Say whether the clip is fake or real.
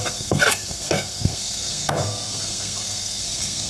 fake